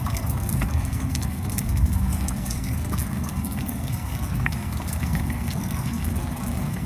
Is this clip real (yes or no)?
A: no